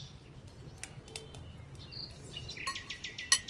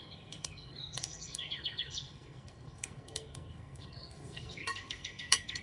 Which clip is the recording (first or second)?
first